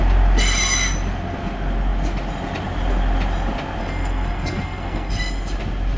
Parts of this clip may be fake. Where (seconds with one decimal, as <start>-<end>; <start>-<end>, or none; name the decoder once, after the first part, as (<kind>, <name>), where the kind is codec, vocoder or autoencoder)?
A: 3.8-5.1 (codec, SNAC)